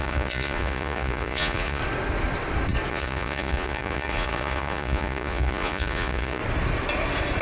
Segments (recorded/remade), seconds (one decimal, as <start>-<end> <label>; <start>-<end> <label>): 0.0-1.8 remade; 1.8-2.9 recorded; 2.9-6.4 remade; 6.4-7.4 recorded

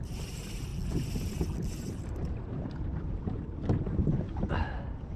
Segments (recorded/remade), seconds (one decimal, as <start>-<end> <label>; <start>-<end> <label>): 0.0-0.7 remade; 0.7-1.8 recorded; 1.8-5.2 remade

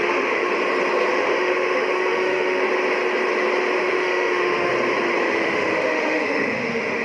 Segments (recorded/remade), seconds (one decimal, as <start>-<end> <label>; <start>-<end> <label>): 0.0-0.5 remade; 0.5-1.1 recorded; 1.1-2.6 remade; 2.6-3.8 recorded; 3.8-4.7 remade; 4.7-5.2 recorded; 5.2-7.0 remade

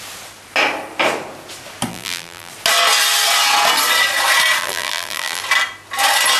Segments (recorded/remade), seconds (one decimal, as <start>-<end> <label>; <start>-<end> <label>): 0.0-1.9 recorded; 1.9-2.5 remade; 2.5-4.6 recorded; 4.6-5.4 remade; 5.4-6.4 recorded

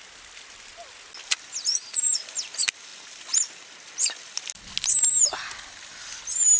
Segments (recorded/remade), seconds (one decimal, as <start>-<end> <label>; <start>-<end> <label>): 0.0-6.6 recorded